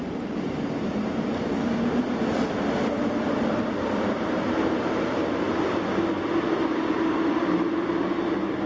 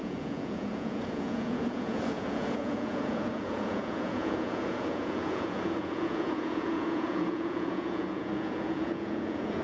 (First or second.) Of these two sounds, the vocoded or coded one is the second